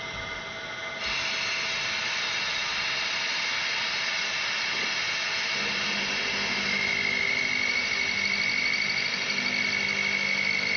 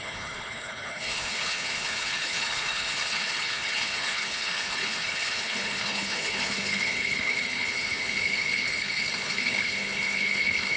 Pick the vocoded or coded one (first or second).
second